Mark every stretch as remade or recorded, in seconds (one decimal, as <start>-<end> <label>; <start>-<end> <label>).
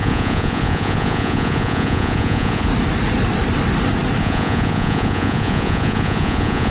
0.0-2.7 remade; 2.7-4.2 recorded; 4.2-6.7 remade